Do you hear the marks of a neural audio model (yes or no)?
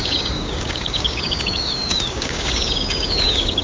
yes